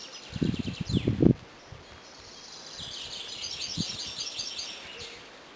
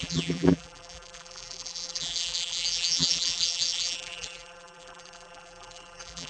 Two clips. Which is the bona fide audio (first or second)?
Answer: first